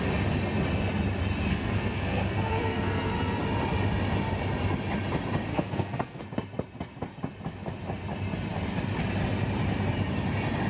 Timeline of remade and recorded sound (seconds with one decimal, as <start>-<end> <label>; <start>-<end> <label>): 0.0-1.5 recorded; 1.5-3.4 remade; 3.4-5.5 recorded; 5.5-6.2 remade; 6.2-10.7 recorded